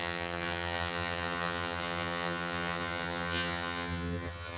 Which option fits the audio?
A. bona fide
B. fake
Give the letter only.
B